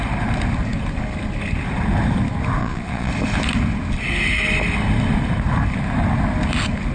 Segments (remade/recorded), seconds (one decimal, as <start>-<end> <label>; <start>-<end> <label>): 0.0-2.6 recorded; 2.6-3.1 remade; 3.1-6.9 recorded